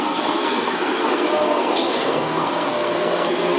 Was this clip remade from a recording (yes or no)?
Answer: yes